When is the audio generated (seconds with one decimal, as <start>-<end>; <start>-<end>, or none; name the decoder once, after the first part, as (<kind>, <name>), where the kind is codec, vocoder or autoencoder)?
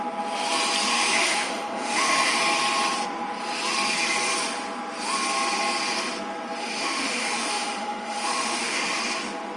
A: 0.9-2.4 (autoencoder, DAC-VAE); 6.6-9.0